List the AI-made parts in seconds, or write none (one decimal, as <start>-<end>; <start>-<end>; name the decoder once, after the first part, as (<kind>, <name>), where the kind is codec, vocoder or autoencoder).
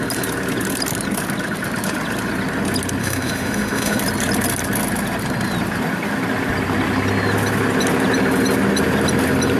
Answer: 3.0-4.0 (autoencoder, DAC-VAE)